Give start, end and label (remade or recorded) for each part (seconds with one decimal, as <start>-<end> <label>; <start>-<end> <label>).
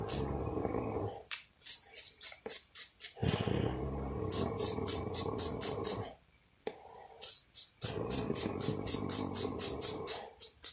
0.0-10.7 recorded